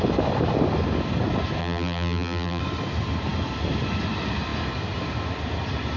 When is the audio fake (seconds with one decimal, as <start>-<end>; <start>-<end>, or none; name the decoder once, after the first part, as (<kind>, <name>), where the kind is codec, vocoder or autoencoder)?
1.6-2.6 (vocoder, BigVGAN v2)